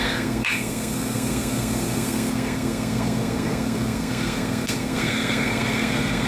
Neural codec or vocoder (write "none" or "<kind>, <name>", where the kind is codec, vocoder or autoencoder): codec, SNAC